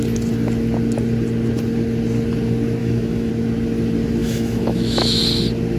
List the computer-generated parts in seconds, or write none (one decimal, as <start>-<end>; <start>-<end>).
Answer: 2.8-3.3; 4.2-5.2